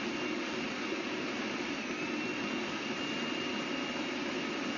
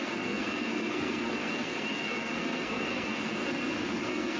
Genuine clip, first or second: first